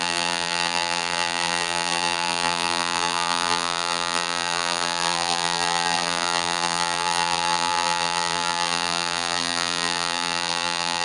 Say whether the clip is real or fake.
fake